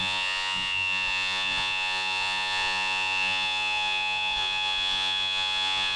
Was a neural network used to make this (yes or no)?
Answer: yes